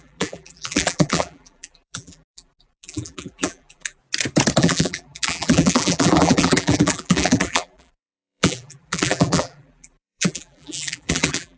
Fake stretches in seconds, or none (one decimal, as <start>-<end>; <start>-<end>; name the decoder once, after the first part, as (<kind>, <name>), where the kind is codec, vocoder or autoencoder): 0.0-4.0 (vocoder, BigVGAN v2); 4.6-11.6